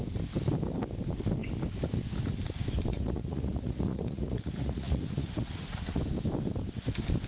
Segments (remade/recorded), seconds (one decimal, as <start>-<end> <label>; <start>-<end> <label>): 0.0-2.9 recorded; 2.9-6.0 remade; 6.0-7.3 recorded